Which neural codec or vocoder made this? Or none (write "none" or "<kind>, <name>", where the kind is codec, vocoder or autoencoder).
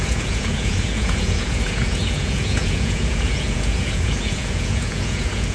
vocoder, Vocos